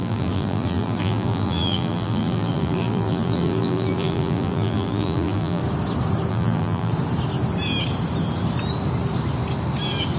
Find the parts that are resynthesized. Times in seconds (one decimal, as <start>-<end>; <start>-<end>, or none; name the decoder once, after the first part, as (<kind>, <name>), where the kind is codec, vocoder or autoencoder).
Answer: 0.0-5.6 (vocoder, BigVGAN v2); 6.3-6.9